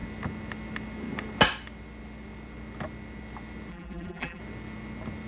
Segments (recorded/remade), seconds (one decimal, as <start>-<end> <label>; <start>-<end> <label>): 0.0-3.7 recorded; 3.7-4.4 remade; 4.4-5.3 recorded